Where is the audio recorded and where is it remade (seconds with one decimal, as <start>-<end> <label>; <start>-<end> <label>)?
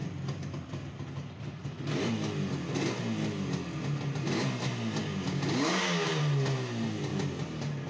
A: 0.0-5.0 recorded; 5.0-6.2 remade; 6.2-7.9 recorded